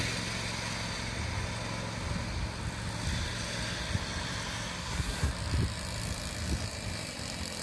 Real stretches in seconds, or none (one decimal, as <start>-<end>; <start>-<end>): 0.0-4.8; 5.3-7.6